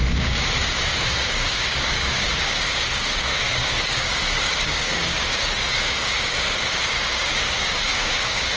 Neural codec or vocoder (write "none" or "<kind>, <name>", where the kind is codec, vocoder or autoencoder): codec, DAC